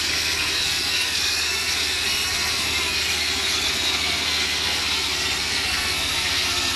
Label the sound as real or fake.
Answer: fake